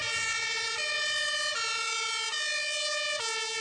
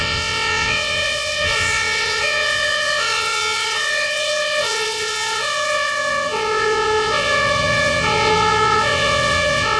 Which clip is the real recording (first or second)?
first